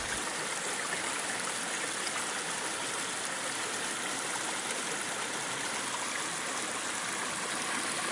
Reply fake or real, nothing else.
real